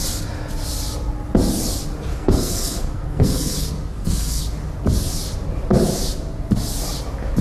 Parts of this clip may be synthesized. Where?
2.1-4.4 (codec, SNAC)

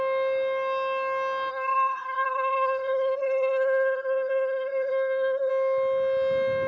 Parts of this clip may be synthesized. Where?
1.5-5.5 (codec, SNAC)

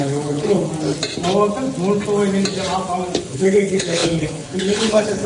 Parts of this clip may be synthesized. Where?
0.0-0.7 (codec, HILCodec); 3.2-5.3

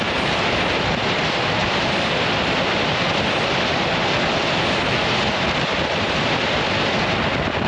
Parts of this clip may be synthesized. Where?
1.6-2.3 (vocoder, BigVGAN v2); 5.0-6.9

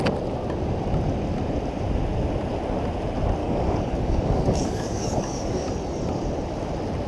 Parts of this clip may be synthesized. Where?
3.4-5.7 (codec, DAC)